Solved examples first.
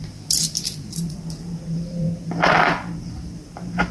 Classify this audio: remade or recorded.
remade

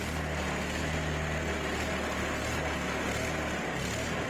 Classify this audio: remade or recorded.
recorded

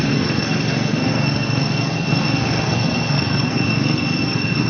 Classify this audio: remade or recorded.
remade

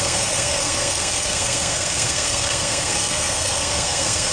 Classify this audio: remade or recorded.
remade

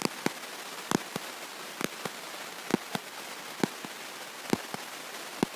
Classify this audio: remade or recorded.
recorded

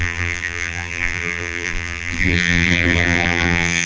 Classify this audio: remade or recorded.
remade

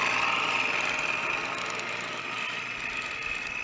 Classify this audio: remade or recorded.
recorded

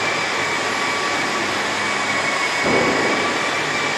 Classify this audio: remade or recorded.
recorded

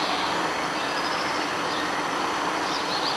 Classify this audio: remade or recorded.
recorded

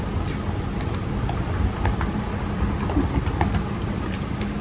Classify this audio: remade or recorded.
recorded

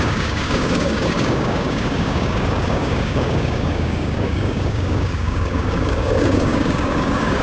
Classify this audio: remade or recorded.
remade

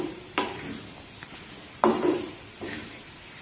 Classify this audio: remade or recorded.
remade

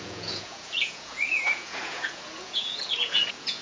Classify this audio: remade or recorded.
remade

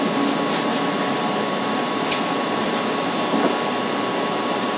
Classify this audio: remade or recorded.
recorded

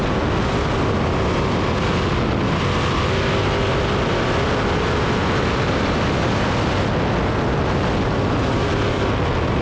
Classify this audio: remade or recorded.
recorded